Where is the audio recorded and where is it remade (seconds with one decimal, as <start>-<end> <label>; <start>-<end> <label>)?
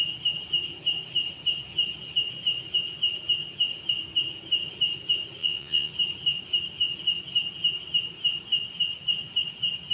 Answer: 0.0-5.4 recorded; 5.4-5.9 remade; 5.9-9.9 recorded